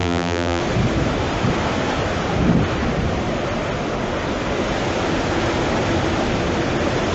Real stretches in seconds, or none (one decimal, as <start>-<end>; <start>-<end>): 0.6-7.1

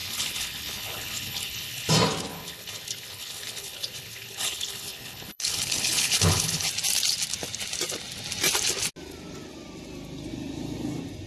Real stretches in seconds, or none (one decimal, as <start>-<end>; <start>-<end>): 1.9-2.3; 6.7-11.3

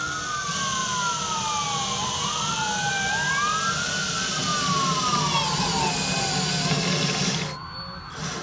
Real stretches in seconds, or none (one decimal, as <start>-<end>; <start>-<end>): 0.0-8.4

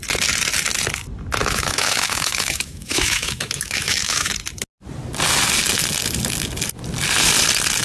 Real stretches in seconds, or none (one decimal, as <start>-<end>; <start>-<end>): 0.0-1.4; 4.3-7.8

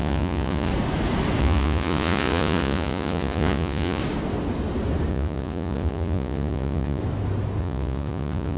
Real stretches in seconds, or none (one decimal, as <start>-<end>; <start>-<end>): 0.7-1.4; 4.0-5.1; 7.0-7.6

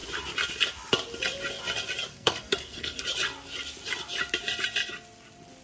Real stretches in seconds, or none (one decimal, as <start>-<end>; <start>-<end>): 0.0-2.1; 3.0-5.6